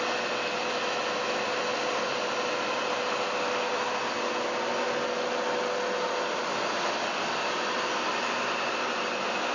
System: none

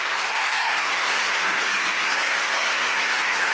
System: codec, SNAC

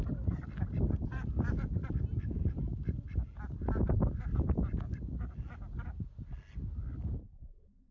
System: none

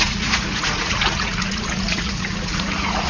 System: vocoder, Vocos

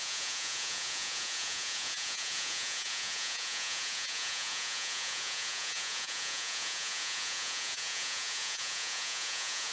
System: vocoder, Vocos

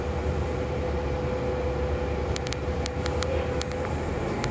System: none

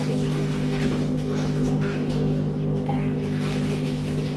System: codec, DAC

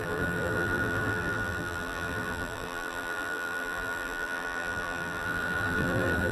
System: vocoder, BigVGAN v2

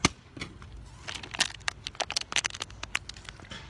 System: none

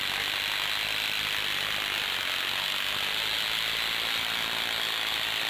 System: none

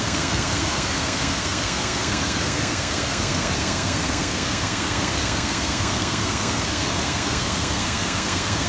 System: codec, SNAC